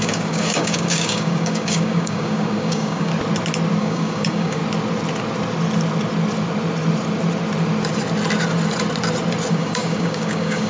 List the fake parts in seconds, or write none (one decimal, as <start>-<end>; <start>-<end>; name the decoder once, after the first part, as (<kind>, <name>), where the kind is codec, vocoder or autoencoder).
0.0-3.1 (codec, DAC); 3.8-4.6; 9.5-10.7